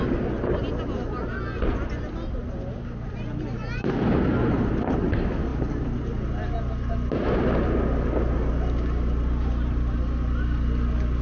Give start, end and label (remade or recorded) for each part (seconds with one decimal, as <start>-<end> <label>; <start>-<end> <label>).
0.0-11.2 recorded